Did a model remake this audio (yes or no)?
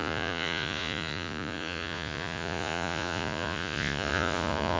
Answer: yes